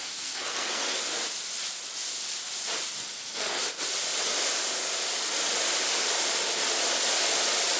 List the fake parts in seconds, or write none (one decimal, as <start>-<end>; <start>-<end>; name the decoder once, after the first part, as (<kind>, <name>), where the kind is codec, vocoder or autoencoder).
0.0-1.0 (codec, SNAC); 3.0-3.6